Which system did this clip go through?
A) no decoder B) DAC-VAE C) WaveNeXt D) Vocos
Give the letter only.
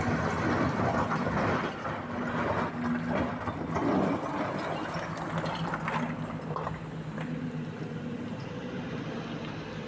A